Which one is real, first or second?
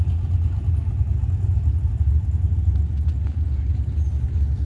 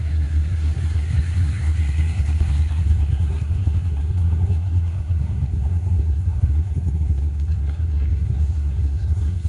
first